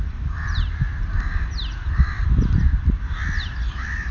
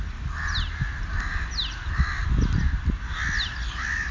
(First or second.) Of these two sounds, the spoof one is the first